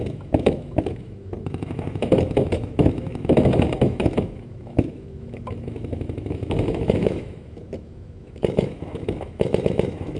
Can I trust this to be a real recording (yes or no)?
no